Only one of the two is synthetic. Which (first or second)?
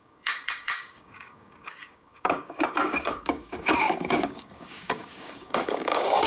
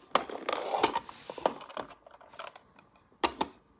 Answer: first